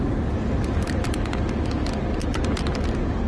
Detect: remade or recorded recorded